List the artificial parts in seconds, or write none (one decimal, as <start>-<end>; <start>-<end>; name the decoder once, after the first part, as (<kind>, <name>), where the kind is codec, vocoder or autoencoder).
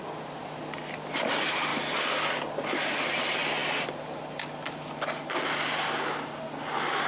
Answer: none